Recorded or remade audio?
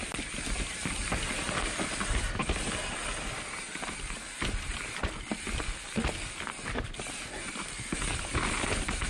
recorded